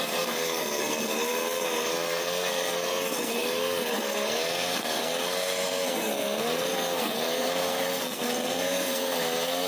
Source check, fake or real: fake